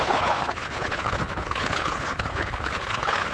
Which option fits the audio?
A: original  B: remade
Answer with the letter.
B